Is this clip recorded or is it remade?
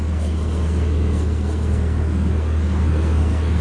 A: remade